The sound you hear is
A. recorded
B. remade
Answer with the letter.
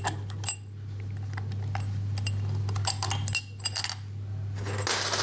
A